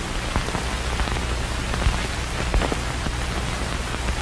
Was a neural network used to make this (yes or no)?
no